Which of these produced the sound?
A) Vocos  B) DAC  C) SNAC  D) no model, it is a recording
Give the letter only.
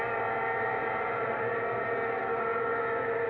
D